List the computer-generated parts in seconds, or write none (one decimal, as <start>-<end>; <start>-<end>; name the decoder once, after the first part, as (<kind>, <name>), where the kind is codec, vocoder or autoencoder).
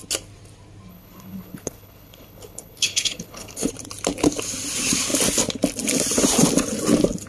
0.9-3.7 (codec, HILCodec)